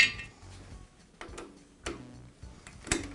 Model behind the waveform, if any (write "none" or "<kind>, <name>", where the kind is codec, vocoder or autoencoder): none